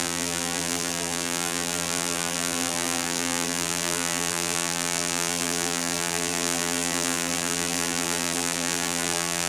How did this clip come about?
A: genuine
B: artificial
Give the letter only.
B